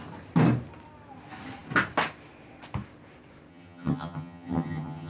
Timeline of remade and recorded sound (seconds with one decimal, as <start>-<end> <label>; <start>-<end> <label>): 0.0-3.5 recorded; 3.5-5.1 remade